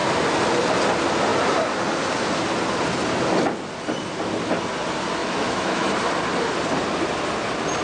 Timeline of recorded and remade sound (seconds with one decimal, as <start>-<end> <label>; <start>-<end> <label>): 0.0-5.2 recorded; 5.2-5.9 remade; 5.9-7.8 recorded